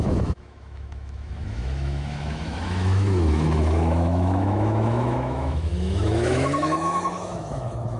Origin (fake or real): fake